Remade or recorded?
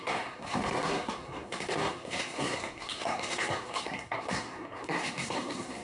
remade